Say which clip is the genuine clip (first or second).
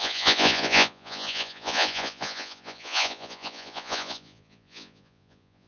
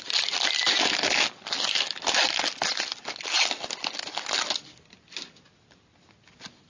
second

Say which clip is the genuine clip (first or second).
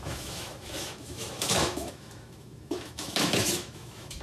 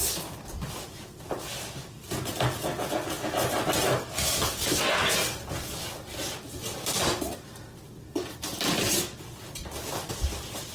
second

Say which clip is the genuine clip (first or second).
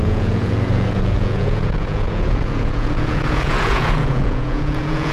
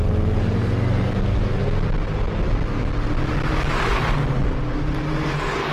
second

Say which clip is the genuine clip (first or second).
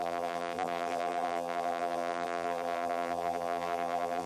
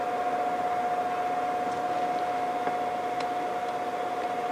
second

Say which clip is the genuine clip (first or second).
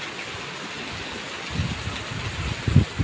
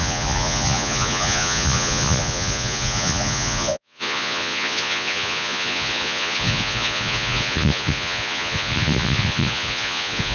first